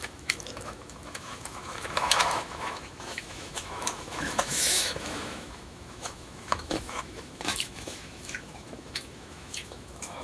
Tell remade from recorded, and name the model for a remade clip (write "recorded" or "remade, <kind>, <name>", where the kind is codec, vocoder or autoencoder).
remade, autoencoder, DAC-VAE